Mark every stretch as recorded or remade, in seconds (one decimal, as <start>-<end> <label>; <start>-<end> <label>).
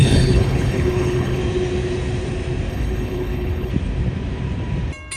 0.0-1.4 remade; 1.4-2.7 recorded; 2.7-3.7 remade; 3.7-5.2 recorded